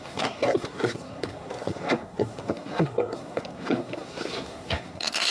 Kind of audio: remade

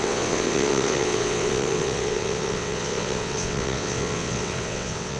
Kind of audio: remade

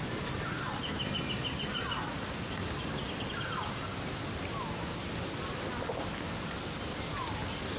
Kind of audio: recorded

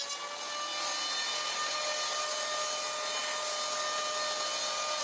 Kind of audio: recorded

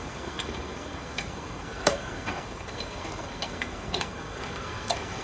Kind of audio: remade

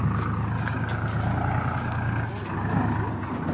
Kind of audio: recorded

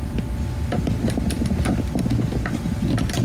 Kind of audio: recorded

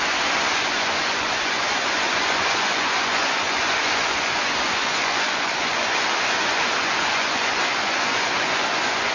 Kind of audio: remade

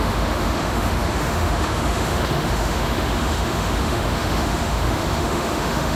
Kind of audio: remade